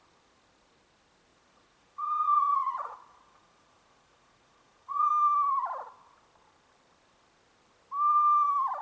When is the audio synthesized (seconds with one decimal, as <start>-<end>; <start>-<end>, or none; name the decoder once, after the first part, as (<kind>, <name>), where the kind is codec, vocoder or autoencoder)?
1.3-5.1 (vocoder, Vocos)